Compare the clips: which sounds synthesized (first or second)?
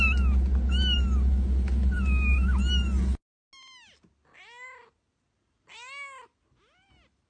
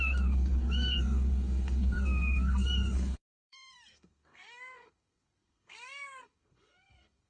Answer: second